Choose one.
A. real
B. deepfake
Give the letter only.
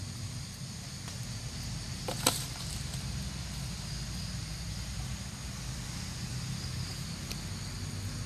A